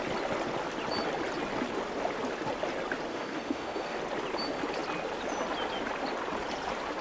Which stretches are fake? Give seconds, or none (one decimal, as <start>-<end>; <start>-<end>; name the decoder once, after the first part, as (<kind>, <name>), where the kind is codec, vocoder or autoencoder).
3.1-4.0 (codec, SNAC)